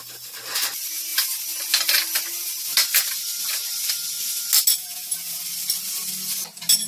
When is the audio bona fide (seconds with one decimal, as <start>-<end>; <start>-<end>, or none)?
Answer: 0.0-4.8; 5.4-6.9